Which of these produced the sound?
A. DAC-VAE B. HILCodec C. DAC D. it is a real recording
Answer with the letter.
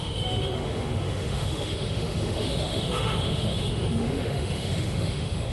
A